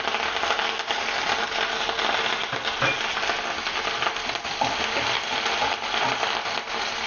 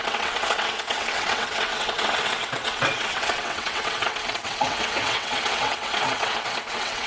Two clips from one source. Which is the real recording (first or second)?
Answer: first